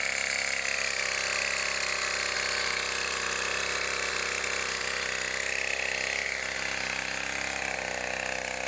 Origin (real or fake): real